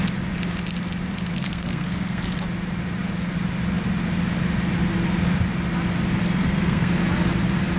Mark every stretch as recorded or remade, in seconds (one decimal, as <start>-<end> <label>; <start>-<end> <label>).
0.0-1.3 recorded; 1.3-2.3 remade; 2.3-6.4 recorded; 6.4-6.9 remade; 6.9-7.8 recorded